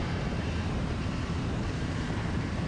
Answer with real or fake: fake